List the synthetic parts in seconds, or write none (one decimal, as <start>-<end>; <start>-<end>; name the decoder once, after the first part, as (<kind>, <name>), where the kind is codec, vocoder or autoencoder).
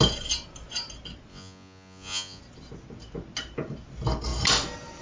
1.3-2.4 (vocoder, Vocos)